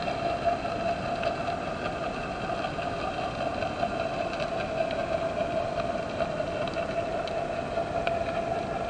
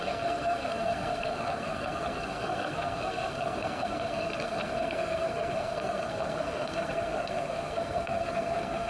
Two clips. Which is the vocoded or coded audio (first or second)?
second